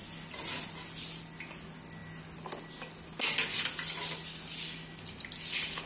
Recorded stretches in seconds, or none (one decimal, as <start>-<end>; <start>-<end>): 0.0-5.9

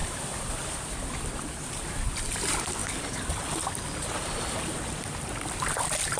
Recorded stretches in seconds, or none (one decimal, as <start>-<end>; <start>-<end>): 2.8-5.8

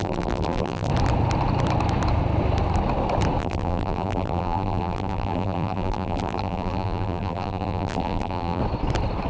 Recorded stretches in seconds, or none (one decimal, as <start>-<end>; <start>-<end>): 0.9-3.4; 8.6-9.3